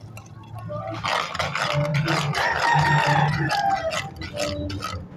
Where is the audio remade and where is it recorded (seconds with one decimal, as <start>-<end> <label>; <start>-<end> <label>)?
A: 0.0-1.9 recorded; 1.9-3.7 remade; 3.7-5.2 recorded